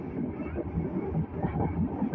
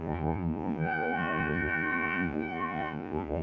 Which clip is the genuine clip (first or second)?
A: first